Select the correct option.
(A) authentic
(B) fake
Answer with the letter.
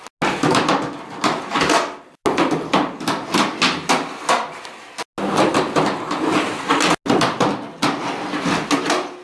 A